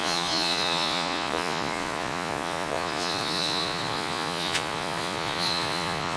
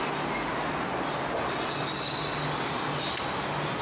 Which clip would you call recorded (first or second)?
second